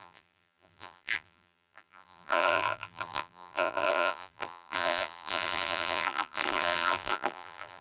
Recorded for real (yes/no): no